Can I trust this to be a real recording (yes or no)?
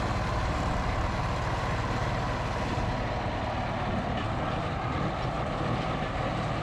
yes